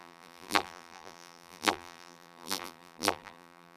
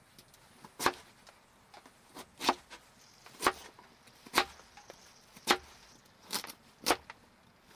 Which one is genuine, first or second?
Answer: second